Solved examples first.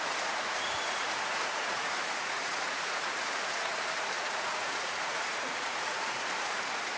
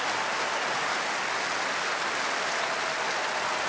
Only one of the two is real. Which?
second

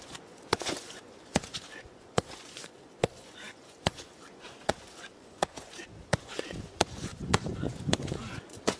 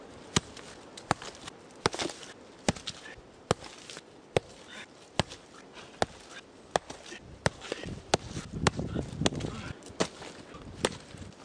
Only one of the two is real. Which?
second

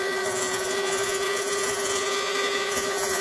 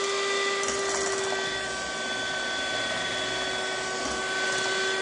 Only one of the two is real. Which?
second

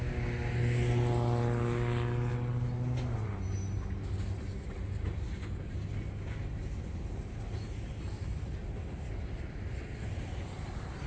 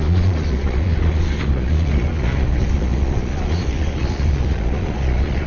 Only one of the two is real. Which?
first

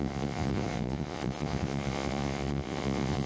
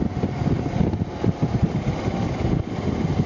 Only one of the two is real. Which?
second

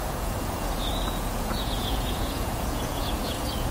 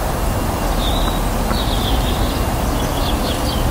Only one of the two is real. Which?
second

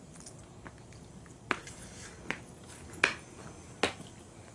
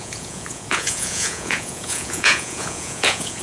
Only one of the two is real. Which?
first